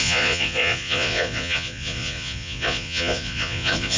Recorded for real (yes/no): no